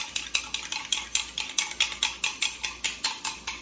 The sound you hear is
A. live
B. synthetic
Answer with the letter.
A